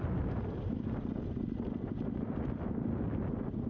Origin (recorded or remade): recorded